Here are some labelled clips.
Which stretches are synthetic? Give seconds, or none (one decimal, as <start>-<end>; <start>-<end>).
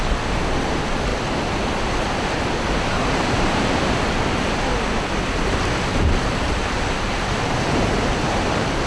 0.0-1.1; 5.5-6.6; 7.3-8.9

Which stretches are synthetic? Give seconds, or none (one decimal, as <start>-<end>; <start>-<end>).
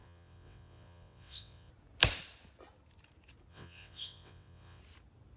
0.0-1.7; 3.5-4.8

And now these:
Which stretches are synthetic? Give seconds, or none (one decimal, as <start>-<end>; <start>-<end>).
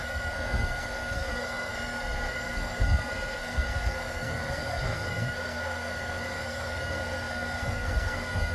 0.0-8.5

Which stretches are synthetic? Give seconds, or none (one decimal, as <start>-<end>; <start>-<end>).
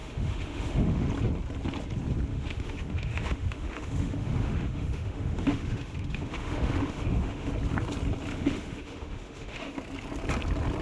0.0-1.1; 2.3-7.5; 8.3-9.8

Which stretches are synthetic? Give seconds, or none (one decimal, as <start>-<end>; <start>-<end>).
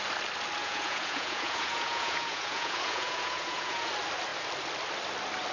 0.6-3.9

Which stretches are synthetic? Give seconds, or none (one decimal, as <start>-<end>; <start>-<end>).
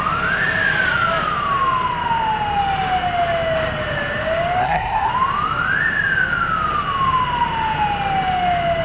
4.6-5.1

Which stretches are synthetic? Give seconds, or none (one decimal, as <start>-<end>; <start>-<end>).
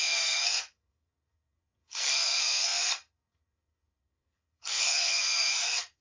0.0-6.0